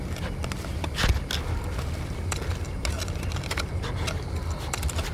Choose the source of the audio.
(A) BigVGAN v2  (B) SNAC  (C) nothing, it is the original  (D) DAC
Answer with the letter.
C